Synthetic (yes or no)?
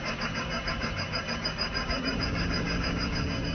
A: yes